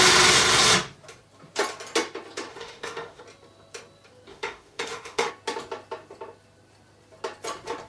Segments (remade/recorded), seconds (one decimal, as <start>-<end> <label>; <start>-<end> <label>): 0.0-2.5 recorded; 2.5-3.2 remade; 3.2-4.3 recorded; 4.3-5.3 remade; 5.3-7.9 recorded